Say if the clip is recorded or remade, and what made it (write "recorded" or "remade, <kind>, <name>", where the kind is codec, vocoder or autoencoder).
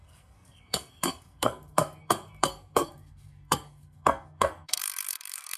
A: remade, codec, SNAC